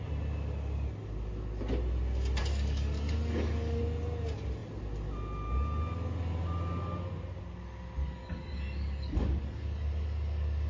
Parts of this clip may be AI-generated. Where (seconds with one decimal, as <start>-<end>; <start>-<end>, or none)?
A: 2.4-3.8; 8.0-10.7